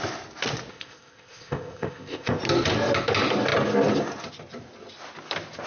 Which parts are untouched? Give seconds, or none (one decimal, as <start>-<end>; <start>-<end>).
0.0-0.7; 2.4-5.7